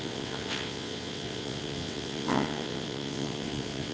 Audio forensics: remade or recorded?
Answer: remade